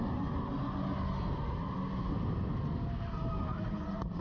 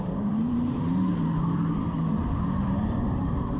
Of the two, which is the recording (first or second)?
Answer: first